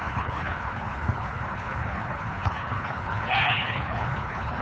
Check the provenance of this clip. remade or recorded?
remade